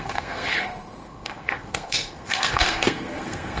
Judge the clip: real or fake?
fake